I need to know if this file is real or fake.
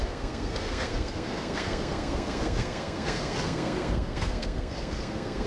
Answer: fake